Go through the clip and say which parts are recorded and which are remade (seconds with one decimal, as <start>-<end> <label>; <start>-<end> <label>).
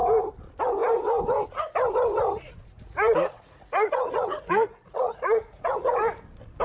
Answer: 0.0-2.3 recorded; 2.3-6.0 remade; 6.0-6.6 recorded